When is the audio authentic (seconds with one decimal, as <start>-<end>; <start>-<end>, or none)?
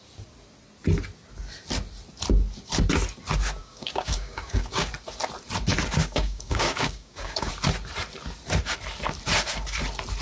0.0-3.6; 4.9-6.0; 7.5-10.2